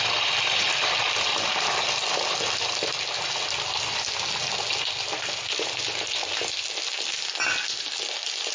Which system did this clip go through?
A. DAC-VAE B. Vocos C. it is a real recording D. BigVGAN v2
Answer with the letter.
C